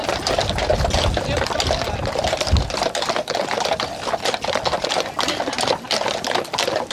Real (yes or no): yes